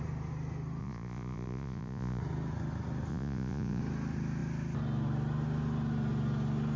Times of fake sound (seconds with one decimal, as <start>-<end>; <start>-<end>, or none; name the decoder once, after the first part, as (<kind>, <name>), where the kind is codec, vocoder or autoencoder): 0.8-2.2 (vocoder, Vocos); 3.1-3.8